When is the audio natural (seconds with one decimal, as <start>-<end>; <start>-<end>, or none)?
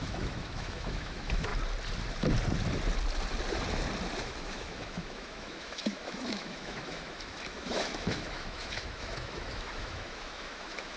1.5-4.2